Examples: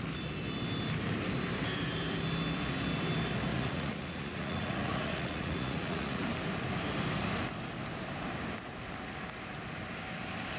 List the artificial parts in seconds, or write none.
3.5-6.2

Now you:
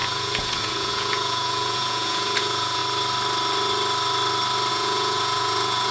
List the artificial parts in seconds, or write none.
0.0-2.8; 4.7-5.9

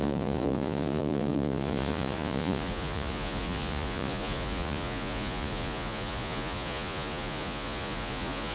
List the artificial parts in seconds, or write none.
0.0-8.5

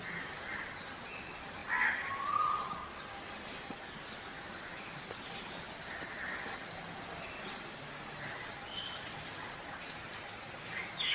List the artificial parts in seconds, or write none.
none

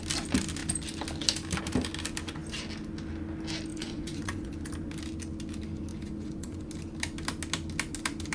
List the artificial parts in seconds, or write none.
3.7-4.5; 5.9-6.7